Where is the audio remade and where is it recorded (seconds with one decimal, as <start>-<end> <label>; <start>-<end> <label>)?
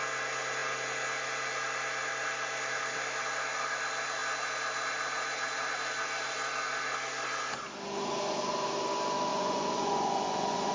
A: 0.0-9.3 recorded; 9.3-10.7 remade